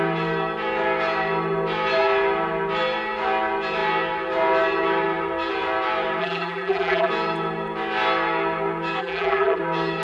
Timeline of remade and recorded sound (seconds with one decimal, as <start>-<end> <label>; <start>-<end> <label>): 0.0-6.2 recorded; 6.2-7.1 remade; 7.1-9.0 recorded; 9.0-9.6 remade; 9.6-10.0 recorded